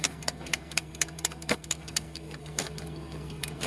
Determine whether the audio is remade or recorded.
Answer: remade